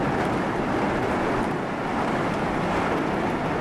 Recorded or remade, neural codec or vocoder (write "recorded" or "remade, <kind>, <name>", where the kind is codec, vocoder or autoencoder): recorded